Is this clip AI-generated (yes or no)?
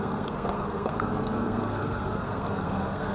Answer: yes